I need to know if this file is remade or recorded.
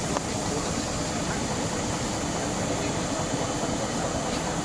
recorded